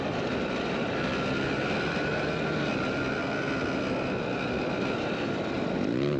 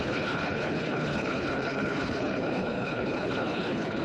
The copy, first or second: second